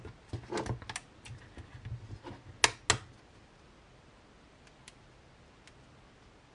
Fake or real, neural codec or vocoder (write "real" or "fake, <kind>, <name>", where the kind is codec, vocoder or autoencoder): real